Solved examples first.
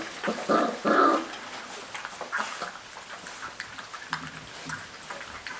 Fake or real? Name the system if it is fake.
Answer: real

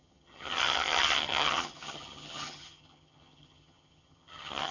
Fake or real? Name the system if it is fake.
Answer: fake, vocoder, HiFi-GAN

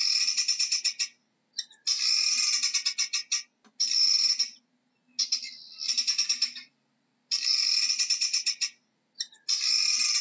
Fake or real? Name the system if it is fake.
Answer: real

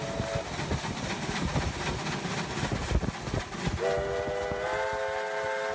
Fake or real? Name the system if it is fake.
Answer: real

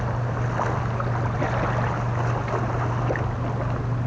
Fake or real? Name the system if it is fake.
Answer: real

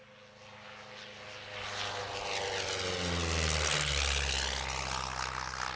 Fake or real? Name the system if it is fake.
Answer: real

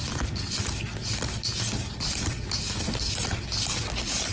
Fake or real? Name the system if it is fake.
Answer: real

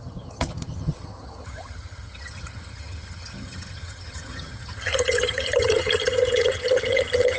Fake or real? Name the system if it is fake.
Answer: fake, vocoder, HiFi-GAN